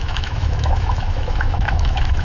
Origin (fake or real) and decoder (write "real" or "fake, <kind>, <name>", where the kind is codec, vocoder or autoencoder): fake, autoencoder, DAC-VAE